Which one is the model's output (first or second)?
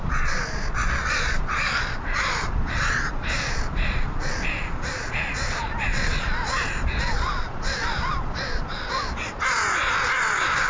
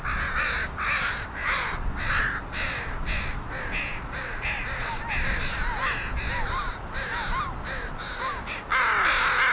first